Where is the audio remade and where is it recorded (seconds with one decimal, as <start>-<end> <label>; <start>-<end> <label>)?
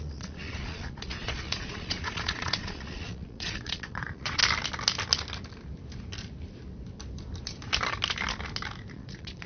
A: 0.0-4.4 remade; 4.4-8.9 recorded; 8.9-9.5 remade